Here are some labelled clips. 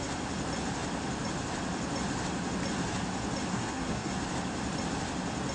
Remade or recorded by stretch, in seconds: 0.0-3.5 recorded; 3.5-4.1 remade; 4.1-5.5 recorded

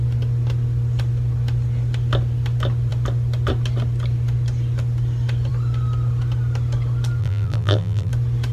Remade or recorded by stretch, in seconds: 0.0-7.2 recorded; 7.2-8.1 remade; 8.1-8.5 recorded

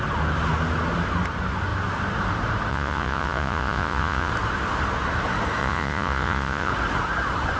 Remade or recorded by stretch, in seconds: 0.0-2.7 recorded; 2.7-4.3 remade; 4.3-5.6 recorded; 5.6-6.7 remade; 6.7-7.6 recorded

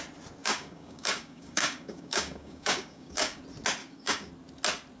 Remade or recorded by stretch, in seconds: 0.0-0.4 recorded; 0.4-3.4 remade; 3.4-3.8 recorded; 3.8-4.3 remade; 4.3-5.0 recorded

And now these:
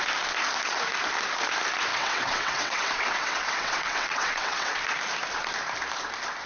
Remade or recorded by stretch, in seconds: 0.0-1.9 recorded; 1.9-4.8 remade; 4.8-6.5 recorded

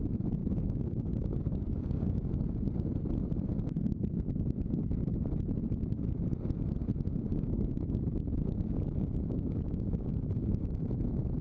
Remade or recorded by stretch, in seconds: 0.0-0.4 recorded; 0.4-2.3 remade; 2.3-7.3 recorded; 7.3-10.9 remade; 10.9-11.4 recorded

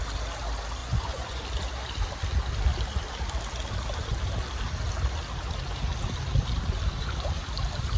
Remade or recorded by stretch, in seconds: 0.0-0.8 recorded; 0.8-1.4 remade; 1.4-8.0 recorded

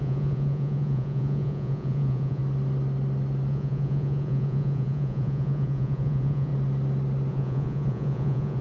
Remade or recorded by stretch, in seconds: 0.0-2.4 remade; 2.4-3.5 recorded; 3.5-6.5 remade; 6.5-7.3 recorded; 7.3-8.6 remade